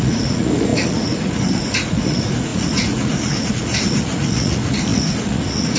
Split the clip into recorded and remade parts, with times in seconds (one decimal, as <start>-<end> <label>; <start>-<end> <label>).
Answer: 0.0-5.8 remade